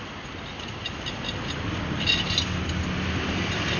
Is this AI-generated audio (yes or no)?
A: no